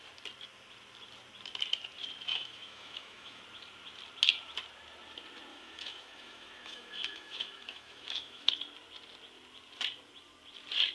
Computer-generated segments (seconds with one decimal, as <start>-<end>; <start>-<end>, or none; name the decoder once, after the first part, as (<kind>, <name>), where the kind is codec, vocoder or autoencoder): 2.3-3.4 (autoencoder, DAC-VAE); 5.5-8.5